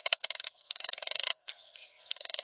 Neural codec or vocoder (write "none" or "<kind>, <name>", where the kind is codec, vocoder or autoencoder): codec, SNAC